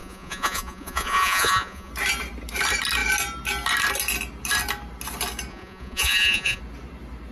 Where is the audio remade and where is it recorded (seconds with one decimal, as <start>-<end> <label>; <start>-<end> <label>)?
0.0-1.9 remade; 1.9-5.5 recorded; 5.5-6.6 remade; 6.6-7.3 recorded